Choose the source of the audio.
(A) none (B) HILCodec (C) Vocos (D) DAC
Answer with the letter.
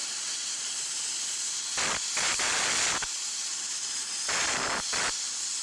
A